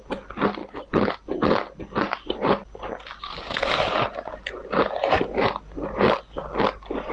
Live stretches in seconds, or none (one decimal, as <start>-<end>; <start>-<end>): 0.0-0.6; 1.1-7.1